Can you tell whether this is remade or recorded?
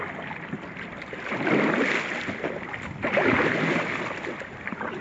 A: recorded